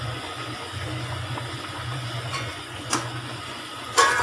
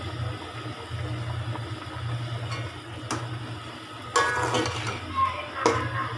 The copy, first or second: first